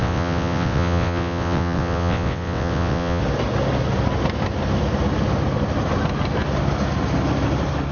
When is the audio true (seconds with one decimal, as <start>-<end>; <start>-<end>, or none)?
3.2-7.9